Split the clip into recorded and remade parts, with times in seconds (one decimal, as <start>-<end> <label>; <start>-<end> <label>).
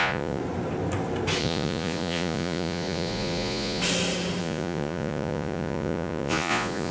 0.0-0.4 remade; 0.4-1.4 recorded; 1.4-3.8 remade; 3.8-4.4 recorded; 4.4-6.9 remade